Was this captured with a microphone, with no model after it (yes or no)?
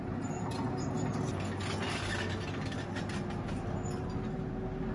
yes